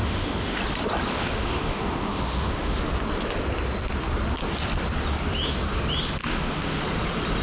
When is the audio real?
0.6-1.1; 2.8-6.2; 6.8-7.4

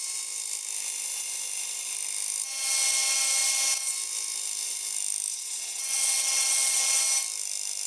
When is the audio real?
0.0-5.3; 7.0-7.9

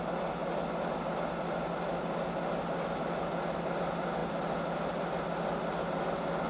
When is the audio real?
0.0-6.5

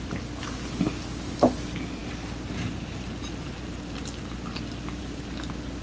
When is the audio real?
0.0-5.8